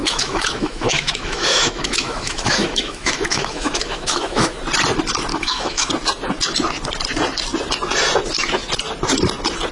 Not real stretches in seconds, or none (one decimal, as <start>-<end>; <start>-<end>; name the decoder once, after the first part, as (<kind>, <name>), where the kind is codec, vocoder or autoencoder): 0.0-4.6 (autoencoder, DAC-VAE); 5.3-5.9